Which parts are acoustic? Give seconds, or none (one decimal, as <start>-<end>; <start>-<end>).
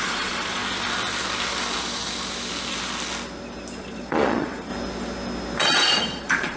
0.6-3.8; 4.7-5.6